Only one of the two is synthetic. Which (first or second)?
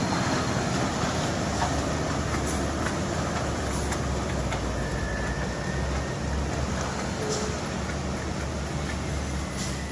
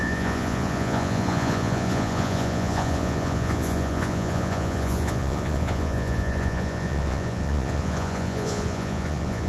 second